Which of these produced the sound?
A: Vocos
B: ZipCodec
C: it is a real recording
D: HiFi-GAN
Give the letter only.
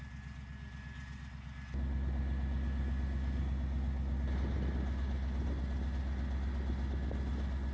C